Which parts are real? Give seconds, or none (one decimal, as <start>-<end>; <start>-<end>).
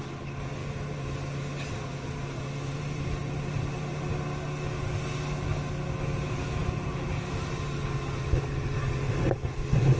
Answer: 0.0-0.6; 4.1-6.6; 7.3-10.0